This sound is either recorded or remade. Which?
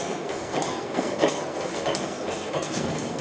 remade